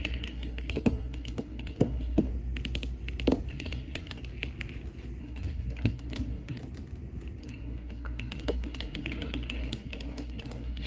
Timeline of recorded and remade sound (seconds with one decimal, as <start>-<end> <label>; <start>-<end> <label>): 0.0-2.3 remade; 2.3-3.5 recorded; 3.5-4.2 remade; 4.2-5.2 recorded; 5.2-6.6 remade; 6.6-7.4 recorded; 7.4-10.9 remade